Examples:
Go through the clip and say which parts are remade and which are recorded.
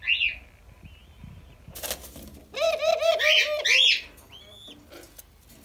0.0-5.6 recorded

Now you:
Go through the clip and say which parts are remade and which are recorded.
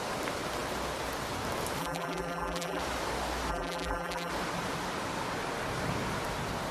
0.0-1.8 recorded; 1.8-2.8 remade; 2.8-3.5 recorded; 3.5-4.3 remade; 4.3-6.7 recorded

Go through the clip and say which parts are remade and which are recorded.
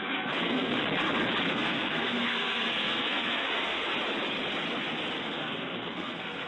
0.0-0.7 remade; 0.7-1.5 recorded; 1.5-3.9 remade; 3.9-5.2 recorded; 5.2-6.5 remade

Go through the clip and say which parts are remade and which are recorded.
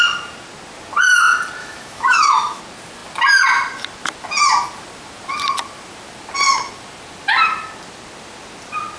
0.0-1.6 recorded; 1.6-2.6 remade; 2.6-9.0 recorded